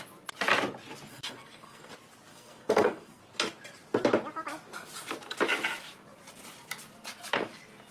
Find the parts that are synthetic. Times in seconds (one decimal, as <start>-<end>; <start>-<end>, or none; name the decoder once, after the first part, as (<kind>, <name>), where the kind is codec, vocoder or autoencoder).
1.1-1.9 (codec, SNAC); 2.3-3.2

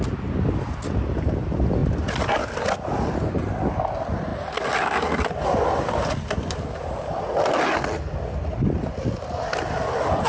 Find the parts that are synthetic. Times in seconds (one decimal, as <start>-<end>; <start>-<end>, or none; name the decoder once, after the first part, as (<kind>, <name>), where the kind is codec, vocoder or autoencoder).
none

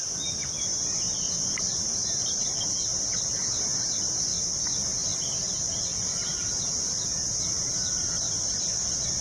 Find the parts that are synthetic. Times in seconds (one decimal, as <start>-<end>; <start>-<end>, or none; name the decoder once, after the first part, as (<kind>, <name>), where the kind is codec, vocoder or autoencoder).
none

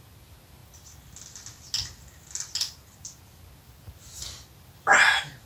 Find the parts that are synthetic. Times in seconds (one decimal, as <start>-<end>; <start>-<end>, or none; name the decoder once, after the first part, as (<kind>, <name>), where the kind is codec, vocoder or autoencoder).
none